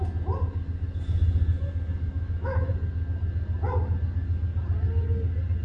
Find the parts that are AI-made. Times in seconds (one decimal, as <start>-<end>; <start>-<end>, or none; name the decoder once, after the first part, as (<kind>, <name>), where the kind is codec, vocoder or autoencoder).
2.1-2.7 (autoencoder, DAC-VAE)